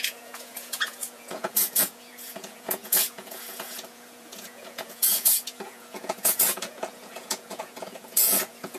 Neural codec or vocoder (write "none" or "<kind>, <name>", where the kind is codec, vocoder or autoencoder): vocoder, Vocos